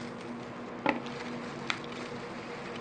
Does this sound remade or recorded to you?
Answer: recorded